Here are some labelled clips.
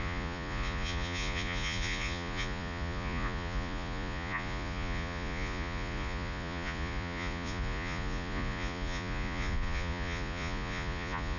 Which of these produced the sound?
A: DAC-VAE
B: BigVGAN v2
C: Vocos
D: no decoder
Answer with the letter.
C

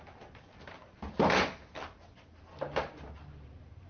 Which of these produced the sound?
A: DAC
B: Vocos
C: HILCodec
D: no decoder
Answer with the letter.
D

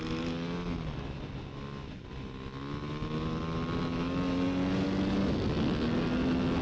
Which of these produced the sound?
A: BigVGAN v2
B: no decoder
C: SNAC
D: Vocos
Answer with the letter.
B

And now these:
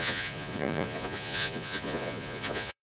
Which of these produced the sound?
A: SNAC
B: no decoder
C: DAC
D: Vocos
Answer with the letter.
D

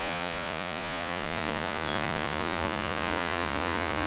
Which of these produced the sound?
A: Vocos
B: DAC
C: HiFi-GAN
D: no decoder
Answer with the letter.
A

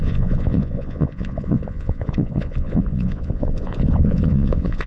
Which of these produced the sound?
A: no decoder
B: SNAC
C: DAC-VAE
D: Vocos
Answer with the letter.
D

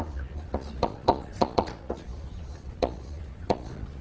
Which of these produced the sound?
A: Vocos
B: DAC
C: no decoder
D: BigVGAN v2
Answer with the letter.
A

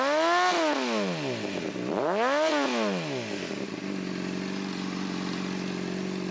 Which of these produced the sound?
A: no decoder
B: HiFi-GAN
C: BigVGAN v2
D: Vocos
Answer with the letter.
A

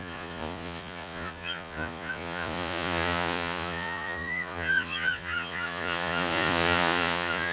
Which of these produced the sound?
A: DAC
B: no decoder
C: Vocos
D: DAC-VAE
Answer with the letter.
C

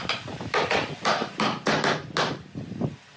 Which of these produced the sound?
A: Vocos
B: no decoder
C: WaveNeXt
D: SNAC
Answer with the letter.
B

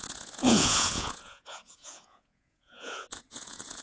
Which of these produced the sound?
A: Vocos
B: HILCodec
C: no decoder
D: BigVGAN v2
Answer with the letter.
A